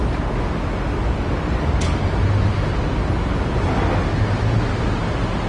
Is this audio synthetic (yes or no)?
no